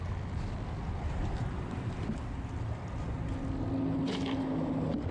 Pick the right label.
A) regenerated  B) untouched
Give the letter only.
B